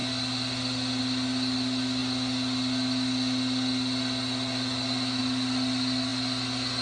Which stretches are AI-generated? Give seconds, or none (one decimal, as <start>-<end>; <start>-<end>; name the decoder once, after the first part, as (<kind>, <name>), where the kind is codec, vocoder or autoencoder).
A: none